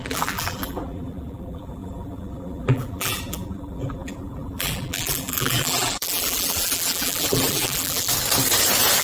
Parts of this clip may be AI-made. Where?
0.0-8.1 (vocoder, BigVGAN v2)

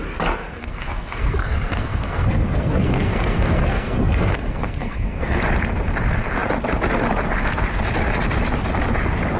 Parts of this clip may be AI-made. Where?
0.4-5.4 (codec, SNAC)

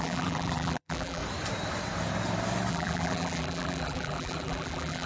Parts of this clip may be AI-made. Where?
0.0-1.2 (vocoder, BigVGAN v2); 2.7-5.1

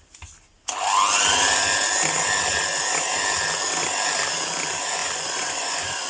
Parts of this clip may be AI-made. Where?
5.0-6.1 (vocoder, Vocos)

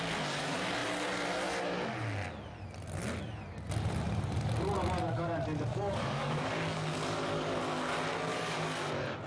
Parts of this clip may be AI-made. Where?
5.7-7.6 (codec, DAC); 8.3-8.9

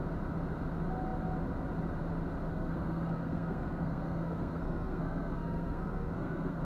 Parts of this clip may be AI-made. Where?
2.5-6.6 (codec, SNAC)

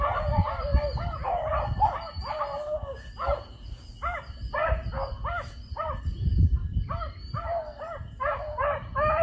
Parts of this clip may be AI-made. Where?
0.0-0.7 (vocoder, BigVGAN v2); 6.0-6.6; 8.3-9.2